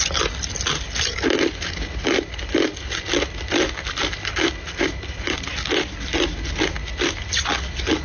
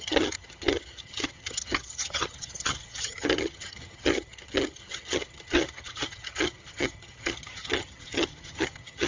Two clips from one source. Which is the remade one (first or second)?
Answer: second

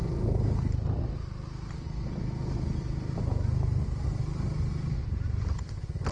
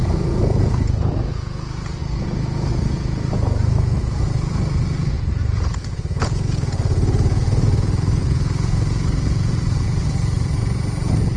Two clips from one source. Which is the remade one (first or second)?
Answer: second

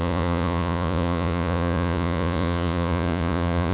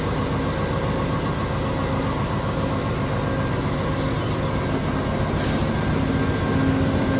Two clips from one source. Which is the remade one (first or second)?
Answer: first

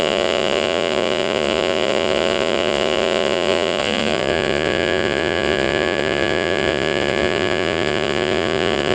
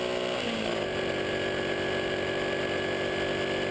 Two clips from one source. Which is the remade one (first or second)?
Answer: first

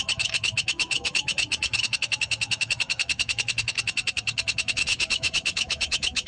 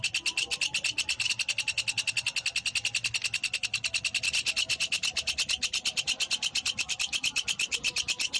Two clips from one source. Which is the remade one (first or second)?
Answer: first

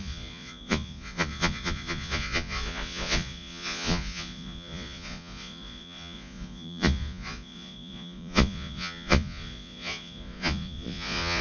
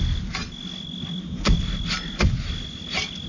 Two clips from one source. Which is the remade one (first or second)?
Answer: first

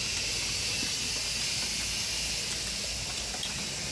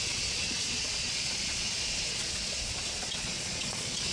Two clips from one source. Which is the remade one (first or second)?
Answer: second